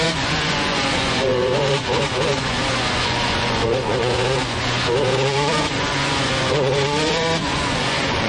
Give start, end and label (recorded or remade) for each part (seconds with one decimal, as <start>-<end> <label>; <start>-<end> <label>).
0.0-8.3 remade